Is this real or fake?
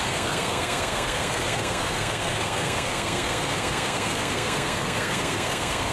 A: fake